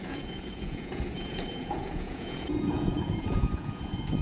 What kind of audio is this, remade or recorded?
remade